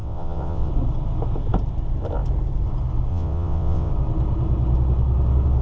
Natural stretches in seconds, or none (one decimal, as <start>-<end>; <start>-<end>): 0.7-3.1; 3.9-5.6